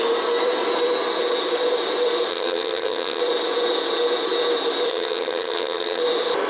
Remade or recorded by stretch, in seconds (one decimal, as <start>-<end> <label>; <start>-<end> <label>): 0.0-2.3 recorded; 2.3-3.2 remade; 3.2-4.9 recorded; 4.9-6.0 remade; 6.0-6.5 recorded